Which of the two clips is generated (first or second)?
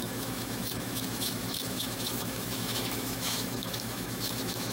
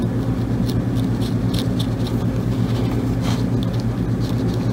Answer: first